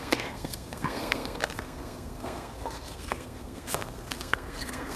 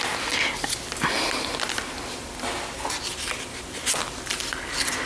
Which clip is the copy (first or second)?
first